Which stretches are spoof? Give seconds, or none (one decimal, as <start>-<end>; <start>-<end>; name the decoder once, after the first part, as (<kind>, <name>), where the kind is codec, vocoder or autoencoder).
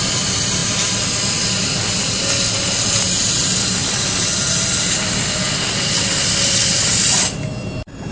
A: 0.0-8.1 (vocoder, BigVGAN v2)